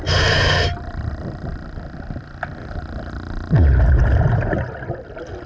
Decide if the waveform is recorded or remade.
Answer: recorded